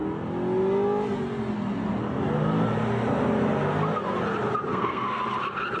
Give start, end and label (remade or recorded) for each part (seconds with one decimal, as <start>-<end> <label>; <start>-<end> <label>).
0.0-4.7 recorded; 4.7-5.2 remade; 5.2-5.8 recorded